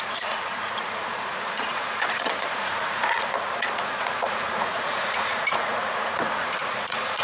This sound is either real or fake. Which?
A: fake